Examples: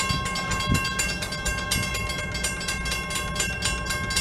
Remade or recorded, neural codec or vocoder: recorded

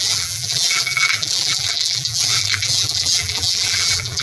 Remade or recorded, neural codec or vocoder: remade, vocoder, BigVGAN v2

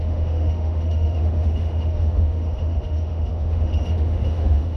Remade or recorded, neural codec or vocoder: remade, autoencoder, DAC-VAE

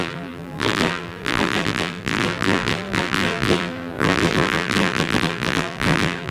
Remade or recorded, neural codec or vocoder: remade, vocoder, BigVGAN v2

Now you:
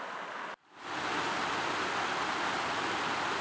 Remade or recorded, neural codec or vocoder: recorded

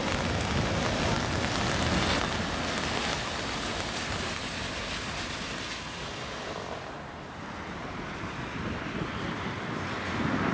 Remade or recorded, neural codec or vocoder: recorded